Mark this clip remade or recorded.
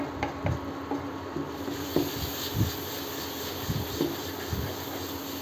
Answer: recorded